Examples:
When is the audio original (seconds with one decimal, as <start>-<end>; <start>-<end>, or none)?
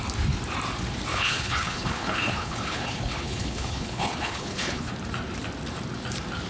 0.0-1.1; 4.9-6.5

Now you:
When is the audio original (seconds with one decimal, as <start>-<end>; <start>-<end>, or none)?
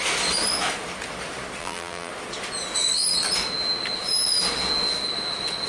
0.0-1.6; 2.1-5.7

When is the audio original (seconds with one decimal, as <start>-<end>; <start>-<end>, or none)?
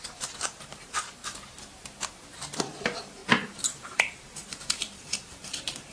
1.2-2.6; 3.2-3.8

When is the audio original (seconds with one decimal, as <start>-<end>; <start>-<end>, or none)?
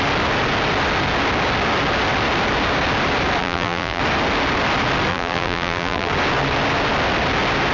0.0-3.4; 4.0-5.1; 6.1-7.7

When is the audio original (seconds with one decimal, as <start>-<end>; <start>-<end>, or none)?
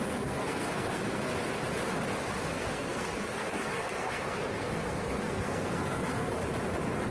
1.3-2.5; 6.4-7.1